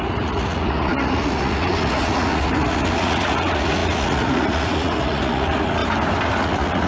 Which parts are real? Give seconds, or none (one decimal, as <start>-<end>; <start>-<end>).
5.8-6.4